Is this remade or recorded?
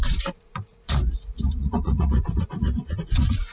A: remade